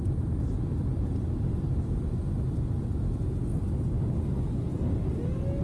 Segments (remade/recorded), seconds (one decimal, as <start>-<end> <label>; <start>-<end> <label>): 0.0-5.6 recorded